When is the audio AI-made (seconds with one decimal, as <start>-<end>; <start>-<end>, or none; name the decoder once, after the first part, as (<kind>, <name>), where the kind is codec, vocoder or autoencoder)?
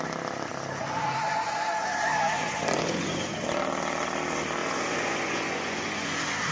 0.8-3.4 (vocoder, Vocos); 4.6-6.5